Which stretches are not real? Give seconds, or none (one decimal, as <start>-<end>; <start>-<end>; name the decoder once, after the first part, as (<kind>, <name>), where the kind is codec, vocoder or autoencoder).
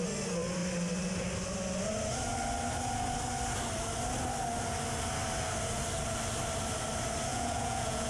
7.3-8.1 (vocoder, Vocos)